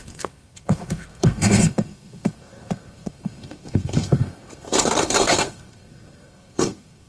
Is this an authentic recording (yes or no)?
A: no